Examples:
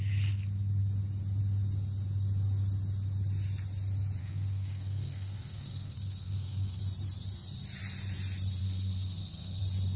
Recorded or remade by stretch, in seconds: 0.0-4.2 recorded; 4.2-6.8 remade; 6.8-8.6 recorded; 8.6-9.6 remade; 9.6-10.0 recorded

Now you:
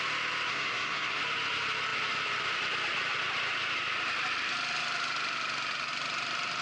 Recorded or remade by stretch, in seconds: 0.0-0.5 recorded; 0.5-1.2 remade; 1.2-6.6 recorded

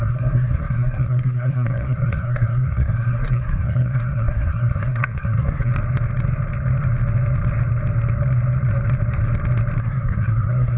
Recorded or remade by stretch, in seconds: 0.0-5.7 remade; 5.7-9.8 recorded; 9.8-10.8 remade